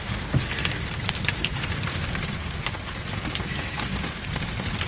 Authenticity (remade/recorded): recorded